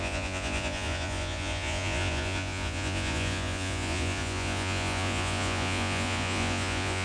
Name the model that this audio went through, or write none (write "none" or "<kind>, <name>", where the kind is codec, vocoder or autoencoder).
vocoder, Vocos